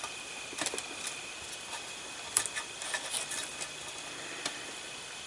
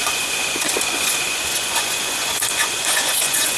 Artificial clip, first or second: second